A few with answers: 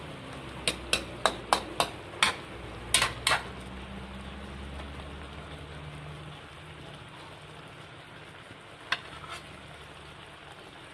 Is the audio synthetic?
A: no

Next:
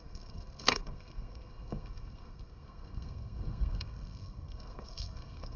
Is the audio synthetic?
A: yes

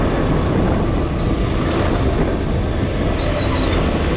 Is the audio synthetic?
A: no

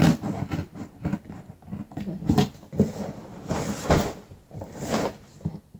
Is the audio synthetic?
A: no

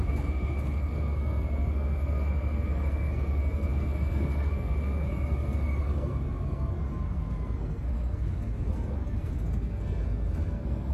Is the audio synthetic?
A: yes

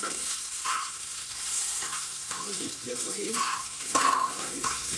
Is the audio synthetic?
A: yes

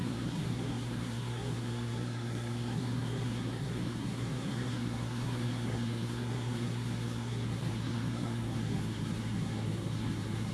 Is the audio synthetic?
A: yes